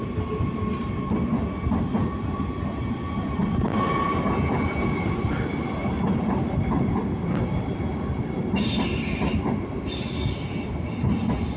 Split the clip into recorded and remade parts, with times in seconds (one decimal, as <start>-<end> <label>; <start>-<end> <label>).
0.0-11.6 recorded